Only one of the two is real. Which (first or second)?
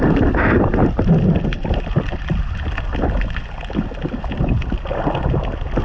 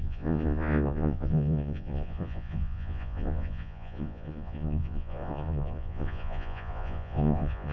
first